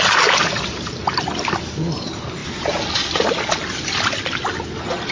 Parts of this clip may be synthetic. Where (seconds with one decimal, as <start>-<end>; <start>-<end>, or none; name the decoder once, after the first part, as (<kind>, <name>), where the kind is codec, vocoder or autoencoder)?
none